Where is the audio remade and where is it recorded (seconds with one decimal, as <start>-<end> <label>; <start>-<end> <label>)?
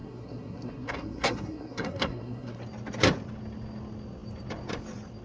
0.0-2.6 remade; 2.6-5.2 recorded